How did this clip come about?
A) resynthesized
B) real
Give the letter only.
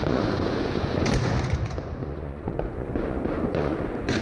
A